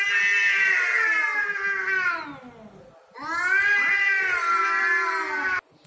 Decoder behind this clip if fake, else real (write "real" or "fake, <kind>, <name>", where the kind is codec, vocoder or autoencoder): real